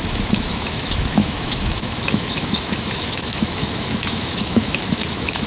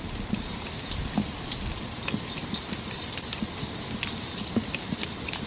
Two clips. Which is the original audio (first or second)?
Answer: second